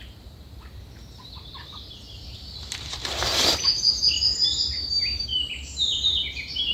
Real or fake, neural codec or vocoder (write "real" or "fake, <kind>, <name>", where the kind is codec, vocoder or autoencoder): fake, vocoder, BigVGAN v2